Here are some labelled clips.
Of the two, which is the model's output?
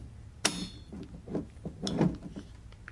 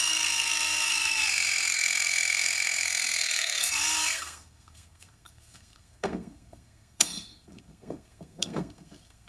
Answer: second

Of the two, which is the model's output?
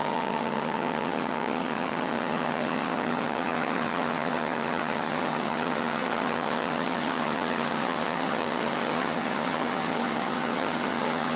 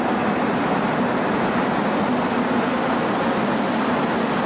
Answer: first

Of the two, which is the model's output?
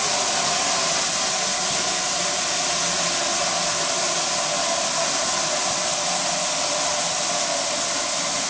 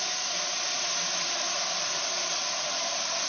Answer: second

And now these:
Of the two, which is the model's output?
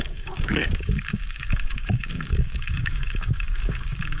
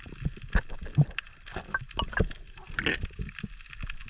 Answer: first